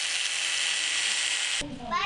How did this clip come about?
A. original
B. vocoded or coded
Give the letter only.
A